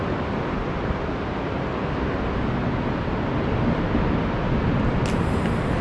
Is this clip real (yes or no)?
yes